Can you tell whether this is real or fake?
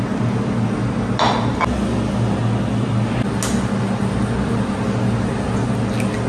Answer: real